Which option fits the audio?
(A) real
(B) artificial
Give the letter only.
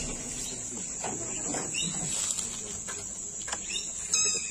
A